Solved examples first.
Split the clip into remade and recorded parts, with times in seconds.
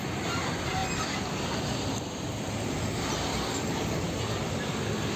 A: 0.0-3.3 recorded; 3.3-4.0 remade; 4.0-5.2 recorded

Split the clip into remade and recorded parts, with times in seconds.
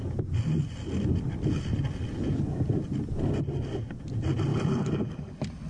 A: 0.0-5.7 recorded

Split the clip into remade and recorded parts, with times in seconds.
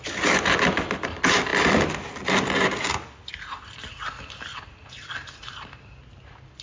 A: 0.0-6.6 recorded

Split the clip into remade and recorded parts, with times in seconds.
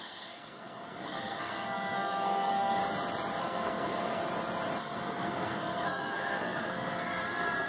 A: 0.0-2.8 remade; 2.8-3.4 recorded; 3.4-4.2 remade; 4.2-4.8 recorded; 4.8-7.7 remade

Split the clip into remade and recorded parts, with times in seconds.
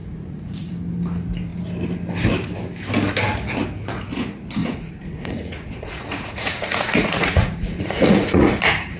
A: 0.0-0.7 remade; 0.7-4.6 recorded; 4.6-9.0 remade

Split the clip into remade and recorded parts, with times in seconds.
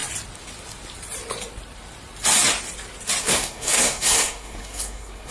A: 0.0-3.2 recorded; 3.2-5.3 remade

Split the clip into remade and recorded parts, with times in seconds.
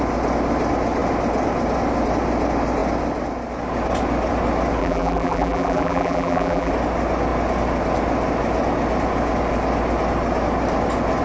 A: 0.0-4.8 recorded; 4.8-6.7 remade; 6.7-11.2 recorded